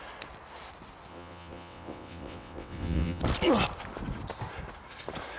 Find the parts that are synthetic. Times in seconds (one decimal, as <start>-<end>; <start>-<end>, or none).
1.1-3.2